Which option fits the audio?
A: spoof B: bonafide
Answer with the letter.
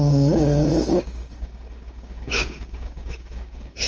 A